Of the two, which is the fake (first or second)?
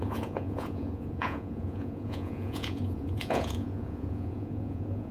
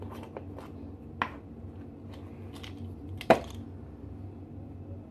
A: first